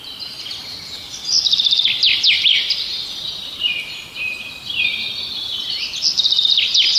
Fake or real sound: real